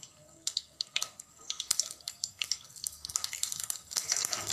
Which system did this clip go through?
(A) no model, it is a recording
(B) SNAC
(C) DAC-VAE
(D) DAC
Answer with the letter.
B